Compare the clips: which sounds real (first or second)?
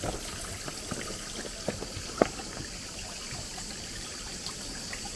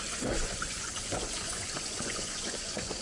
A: first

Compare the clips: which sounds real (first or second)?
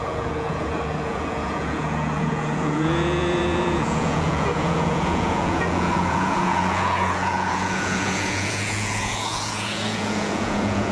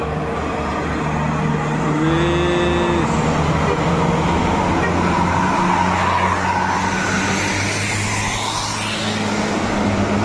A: second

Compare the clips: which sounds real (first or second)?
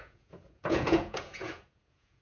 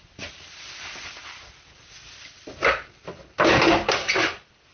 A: second